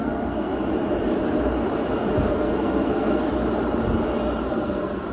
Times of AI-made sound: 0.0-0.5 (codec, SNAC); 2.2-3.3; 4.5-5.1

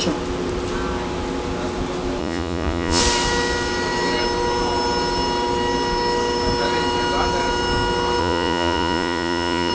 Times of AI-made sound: 2.2-3.0 (vocoder, Vocos); 8.2-9.7

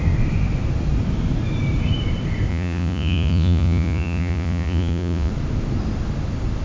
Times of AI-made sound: 2.5-5.3 (vocoder, Vocos)

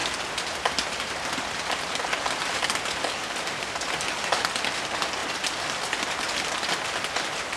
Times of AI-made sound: 5.2-6.3 (vocoder, BigVGAN v2)

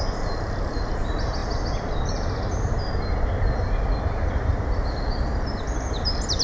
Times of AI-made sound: none